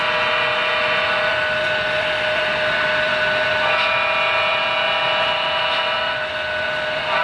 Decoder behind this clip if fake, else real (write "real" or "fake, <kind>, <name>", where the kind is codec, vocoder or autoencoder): real